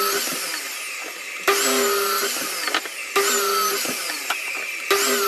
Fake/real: real